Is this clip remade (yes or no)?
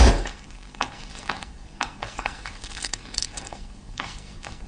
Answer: yes